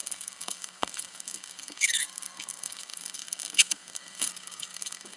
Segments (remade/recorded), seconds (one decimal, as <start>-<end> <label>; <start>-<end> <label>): 0.0-5.2 remade